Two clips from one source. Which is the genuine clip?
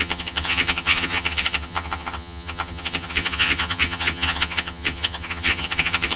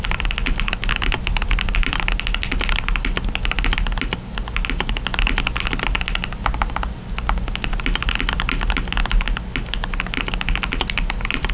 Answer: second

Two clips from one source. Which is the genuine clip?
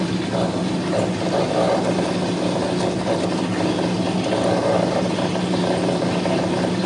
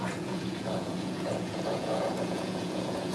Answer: first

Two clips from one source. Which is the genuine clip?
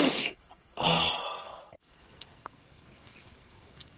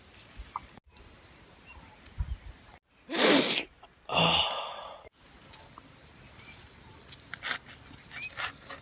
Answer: second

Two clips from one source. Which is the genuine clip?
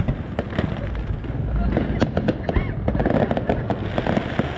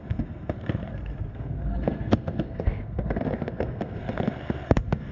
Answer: first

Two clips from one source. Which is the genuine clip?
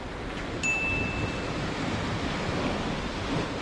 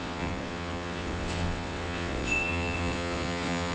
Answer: first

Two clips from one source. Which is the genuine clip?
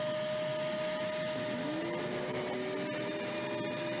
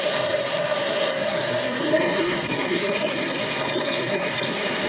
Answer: first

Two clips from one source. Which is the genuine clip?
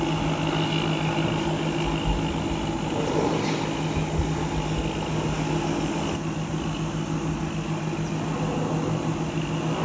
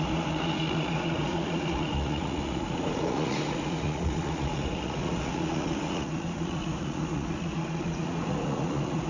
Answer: first